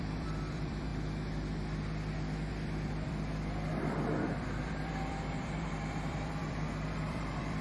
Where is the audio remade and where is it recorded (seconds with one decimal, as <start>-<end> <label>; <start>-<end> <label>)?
0.0-0.9 remade; 0.9-2.5 recorded; 2.5-7.6 remade